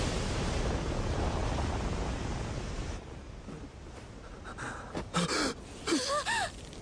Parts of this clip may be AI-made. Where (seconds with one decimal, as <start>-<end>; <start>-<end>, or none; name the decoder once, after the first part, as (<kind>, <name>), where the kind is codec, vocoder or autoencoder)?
none